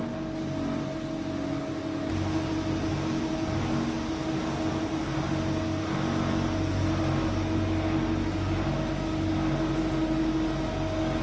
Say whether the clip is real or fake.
real